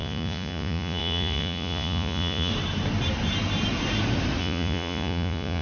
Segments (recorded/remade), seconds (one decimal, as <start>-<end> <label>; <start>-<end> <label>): 0.0-2.5 remade; 2.5-4.4 recorded; 4.4-5.6 remade